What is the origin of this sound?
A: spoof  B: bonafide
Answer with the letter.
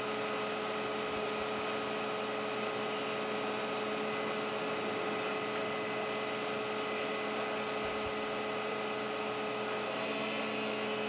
B